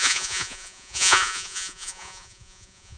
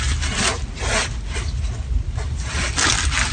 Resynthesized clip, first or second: first